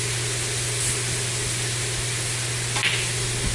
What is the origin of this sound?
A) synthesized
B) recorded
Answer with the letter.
B